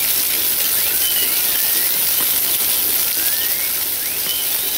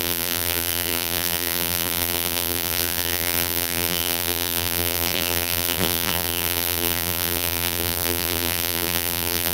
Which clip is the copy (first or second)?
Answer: second